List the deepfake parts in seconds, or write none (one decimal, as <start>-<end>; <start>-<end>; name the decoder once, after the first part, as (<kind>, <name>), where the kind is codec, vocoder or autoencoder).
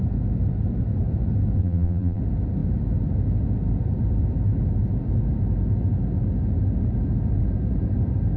1.6-2.2 (vocoder, BigVGAN v2)